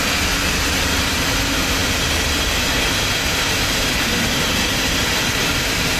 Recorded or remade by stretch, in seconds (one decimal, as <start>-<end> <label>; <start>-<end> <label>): 0.0-6.0 recorded